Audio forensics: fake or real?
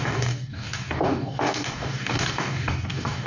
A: fake